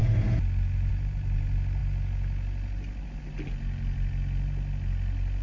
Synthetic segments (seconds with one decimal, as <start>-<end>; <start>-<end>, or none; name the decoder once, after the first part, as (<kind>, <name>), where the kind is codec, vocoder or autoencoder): none